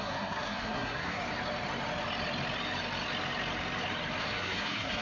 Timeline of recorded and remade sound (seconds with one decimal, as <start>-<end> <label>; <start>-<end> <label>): 0.0-1.2 remade; 1.2-4.2 recorded; 4.2-5.0 remade